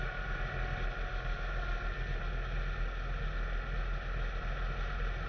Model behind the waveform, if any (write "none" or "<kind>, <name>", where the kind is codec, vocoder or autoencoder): none